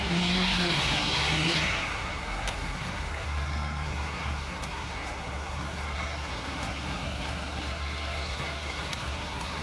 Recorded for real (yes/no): no